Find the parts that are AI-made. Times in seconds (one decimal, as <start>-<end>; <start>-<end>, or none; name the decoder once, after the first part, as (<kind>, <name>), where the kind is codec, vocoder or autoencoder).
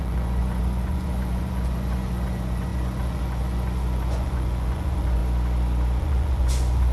0.0-5.2 (vocoder, Vocos); 6.0-6.9